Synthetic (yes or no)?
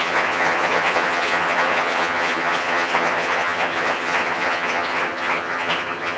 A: yes